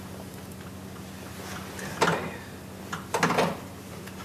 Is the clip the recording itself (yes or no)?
yes